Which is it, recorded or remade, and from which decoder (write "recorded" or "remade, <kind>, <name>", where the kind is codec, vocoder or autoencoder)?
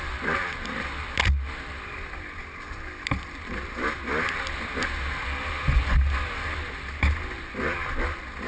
recorded